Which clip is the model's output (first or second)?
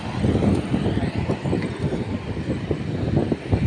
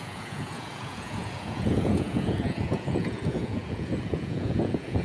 second